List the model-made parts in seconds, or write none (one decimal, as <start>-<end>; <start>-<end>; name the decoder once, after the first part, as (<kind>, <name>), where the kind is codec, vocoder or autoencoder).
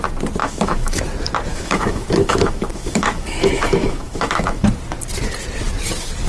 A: 0.4-1.0 (autoencoder, DAC-VAE); 1.5-4.7